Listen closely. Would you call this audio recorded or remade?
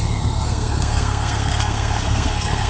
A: remade